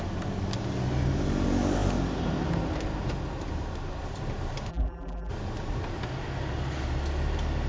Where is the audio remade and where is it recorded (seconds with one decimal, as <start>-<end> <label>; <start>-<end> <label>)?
0.0-4.7 recorded; 4.7-5.3 remade; 5.3-7.7 recorded